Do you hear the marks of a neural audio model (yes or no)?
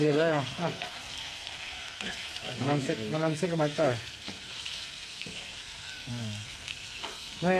yes